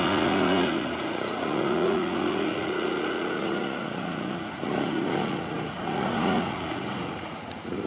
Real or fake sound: fake